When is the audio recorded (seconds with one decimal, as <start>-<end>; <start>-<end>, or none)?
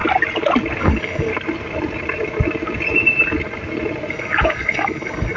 0.0-0.8; 1.3-4.1